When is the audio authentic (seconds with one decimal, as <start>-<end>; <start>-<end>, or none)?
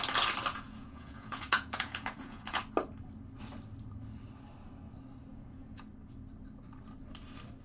0.0-0.5; 2.6-5.3; 5.9-7.6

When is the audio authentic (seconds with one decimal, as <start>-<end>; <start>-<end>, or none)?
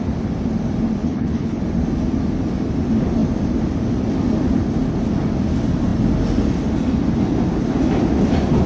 0.0-1.0; 1.6-8.7